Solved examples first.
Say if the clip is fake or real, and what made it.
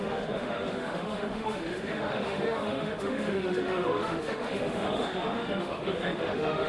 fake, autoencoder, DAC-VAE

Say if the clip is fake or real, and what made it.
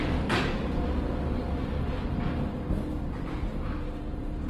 real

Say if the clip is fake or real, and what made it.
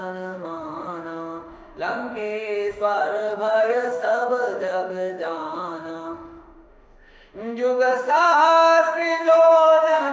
fake, autoencoder, DAC-VAE